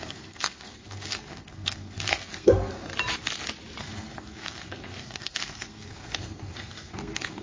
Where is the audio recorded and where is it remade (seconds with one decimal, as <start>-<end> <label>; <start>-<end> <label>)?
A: 0.0-2.9 remade; 2.9-3.8 recorded; 3.8-7.4 remade